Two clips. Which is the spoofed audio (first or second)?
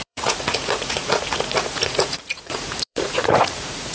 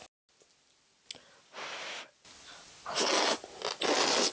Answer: first